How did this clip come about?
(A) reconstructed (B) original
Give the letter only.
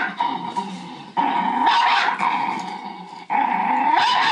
B